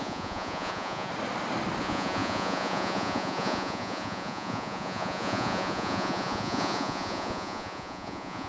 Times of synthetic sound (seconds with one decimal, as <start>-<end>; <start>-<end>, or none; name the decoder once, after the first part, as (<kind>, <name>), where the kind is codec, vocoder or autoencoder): 0.0-1.1 (vocoder, Vocos); 1.8-8.5